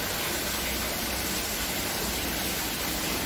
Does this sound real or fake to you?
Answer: real